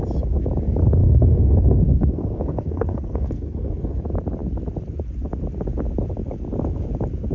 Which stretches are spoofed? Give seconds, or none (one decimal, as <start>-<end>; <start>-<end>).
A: 1.0-4.0